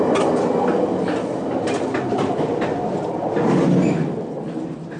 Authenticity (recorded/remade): recorded